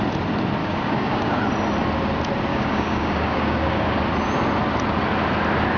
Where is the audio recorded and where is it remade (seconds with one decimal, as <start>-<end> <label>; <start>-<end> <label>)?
0.0-0.6 recorded; 0.6-1.4 remade; 1.4-2.5 recorded; 2.5-4.0 remade; 4.0-5.8 recorded